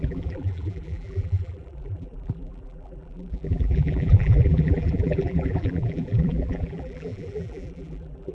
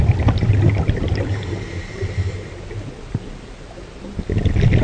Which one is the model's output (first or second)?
first